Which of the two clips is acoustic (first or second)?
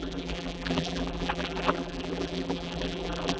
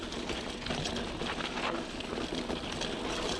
second